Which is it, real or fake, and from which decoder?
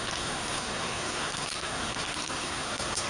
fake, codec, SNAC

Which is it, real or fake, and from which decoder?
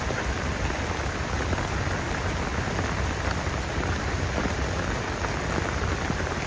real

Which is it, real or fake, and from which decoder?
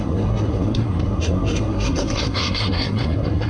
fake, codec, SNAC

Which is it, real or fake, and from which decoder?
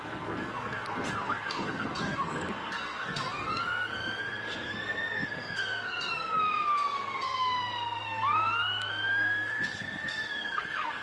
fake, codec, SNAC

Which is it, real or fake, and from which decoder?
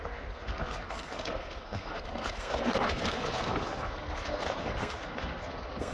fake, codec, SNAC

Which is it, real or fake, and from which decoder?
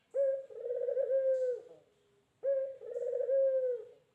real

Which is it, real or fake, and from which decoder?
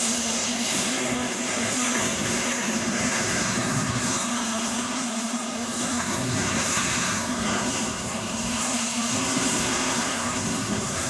fake, codec, SNAC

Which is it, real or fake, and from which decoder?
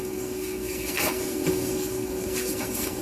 fake, codec, SNAC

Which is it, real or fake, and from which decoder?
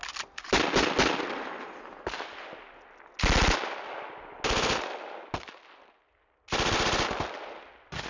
real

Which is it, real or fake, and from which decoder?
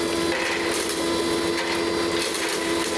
real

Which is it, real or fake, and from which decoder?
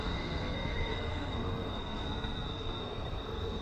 fake, codec, SNAC